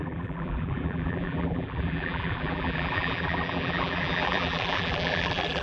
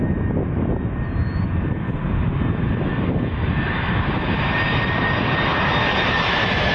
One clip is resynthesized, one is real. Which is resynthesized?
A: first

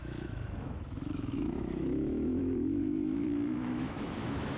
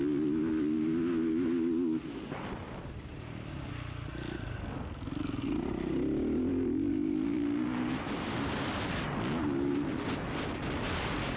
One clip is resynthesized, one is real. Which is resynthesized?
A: first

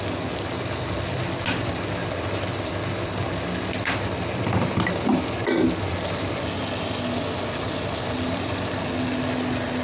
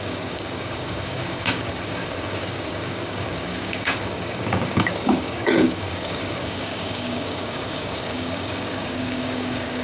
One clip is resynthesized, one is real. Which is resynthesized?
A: second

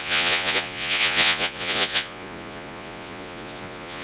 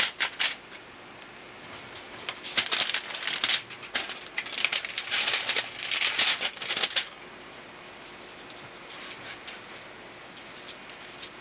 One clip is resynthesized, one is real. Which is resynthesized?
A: first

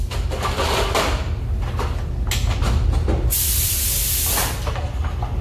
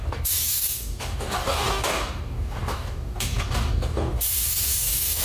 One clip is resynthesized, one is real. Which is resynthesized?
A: second